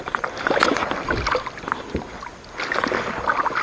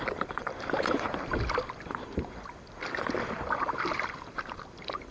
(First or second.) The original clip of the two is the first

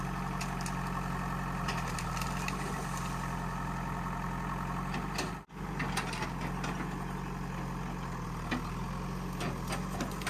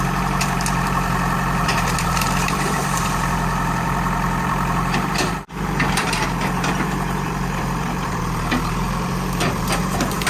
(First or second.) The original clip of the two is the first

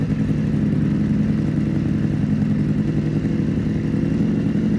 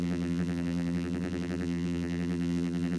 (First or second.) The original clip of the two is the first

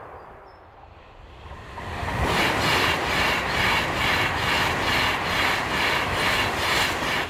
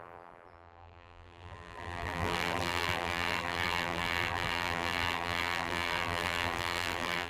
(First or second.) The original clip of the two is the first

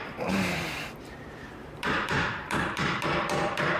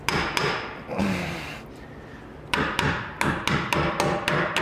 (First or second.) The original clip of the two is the second